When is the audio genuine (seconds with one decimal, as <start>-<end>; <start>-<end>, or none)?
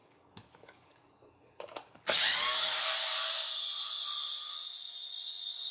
2.8-5.7